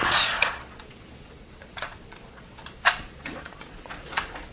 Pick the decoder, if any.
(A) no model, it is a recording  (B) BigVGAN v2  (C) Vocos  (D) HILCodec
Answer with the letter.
C